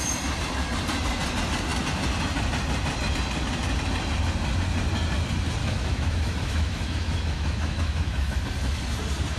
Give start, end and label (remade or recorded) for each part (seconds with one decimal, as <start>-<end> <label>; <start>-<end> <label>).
0.0-5.6 recorded; 5.6-8.4 remade; 8.4-9.4 recorded